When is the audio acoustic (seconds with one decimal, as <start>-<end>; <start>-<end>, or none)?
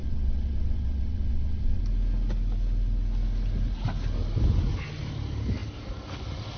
1.8-6.6